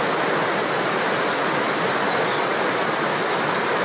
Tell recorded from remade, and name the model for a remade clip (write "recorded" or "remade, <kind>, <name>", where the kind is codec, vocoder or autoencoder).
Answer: recorded